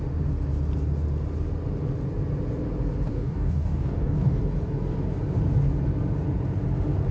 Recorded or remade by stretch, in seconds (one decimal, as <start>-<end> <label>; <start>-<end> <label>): 0.0-3.1 recorded; 3.1-4.4 remade; 4.4-7.1 recorded